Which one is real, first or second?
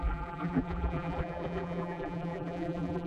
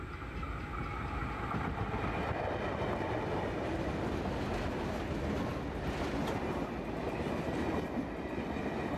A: second